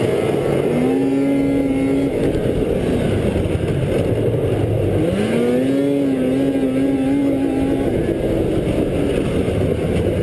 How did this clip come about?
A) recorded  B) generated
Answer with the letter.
A